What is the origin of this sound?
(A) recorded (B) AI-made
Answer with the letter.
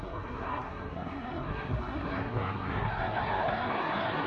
B